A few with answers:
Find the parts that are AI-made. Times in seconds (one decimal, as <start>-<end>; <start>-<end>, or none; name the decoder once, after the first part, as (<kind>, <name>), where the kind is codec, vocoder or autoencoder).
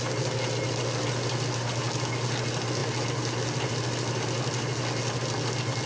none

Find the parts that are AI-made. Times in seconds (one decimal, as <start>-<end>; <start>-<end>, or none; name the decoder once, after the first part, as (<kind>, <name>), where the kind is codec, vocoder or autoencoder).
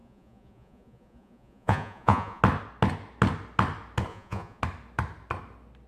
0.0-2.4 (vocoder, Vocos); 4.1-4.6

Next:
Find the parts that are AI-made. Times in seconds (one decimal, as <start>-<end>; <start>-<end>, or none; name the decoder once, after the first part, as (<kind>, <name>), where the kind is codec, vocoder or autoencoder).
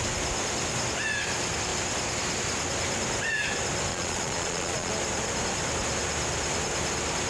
3.9-4.9 (vocoder, Vocos)